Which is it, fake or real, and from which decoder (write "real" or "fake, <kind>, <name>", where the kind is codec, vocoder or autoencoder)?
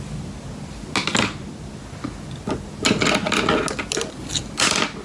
real